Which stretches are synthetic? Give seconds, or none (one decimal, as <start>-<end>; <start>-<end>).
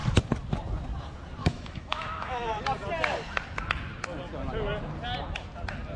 1.4-2.6